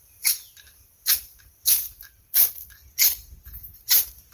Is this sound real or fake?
real